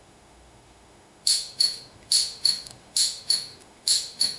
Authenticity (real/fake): fake